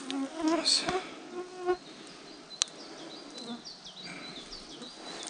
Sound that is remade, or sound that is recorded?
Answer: recorded